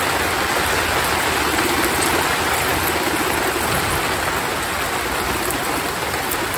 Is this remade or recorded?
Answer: recorded